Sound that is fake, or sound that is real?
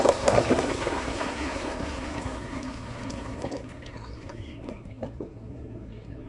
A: fake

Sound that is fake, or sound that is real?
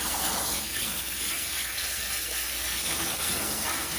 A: fake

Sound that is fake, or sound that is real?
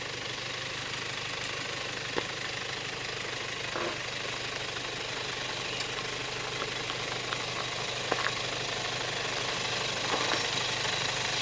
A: real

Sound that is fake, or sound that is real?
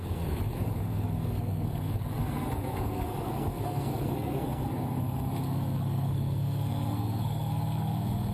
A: fake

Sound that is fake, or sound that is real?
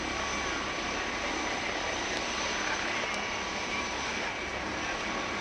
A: real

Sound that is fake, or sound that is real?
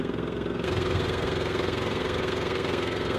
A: fake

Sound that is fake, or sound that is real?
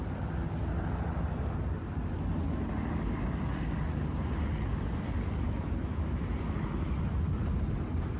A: real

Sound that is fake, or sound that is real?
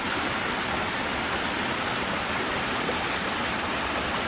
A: real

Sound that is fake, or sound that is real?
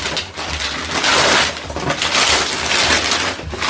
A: real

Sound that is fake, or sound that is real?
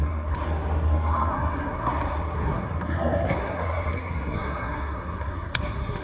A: fake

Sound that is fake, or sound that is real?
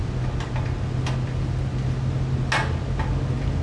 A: real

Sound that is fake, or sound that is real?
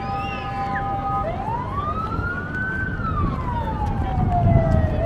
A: real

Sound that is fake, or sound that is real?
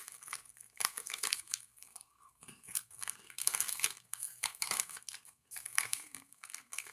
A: fake